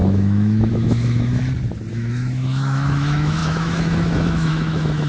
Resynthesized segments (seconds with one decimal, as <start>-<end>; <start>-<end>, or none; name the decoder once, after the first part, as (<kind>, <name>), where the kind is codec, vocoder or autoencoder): 0.0-1.4 (autoencoder, DAC-VAE); 1.9-5.1